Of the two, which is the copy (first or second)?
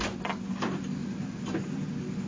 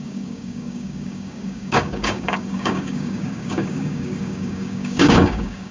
second